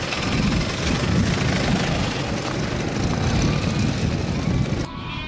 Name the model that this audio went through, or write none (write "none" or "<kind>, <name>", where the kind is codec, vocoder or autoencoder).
vocoder, BigVGAN v2